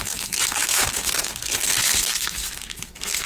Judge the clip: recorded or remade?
remade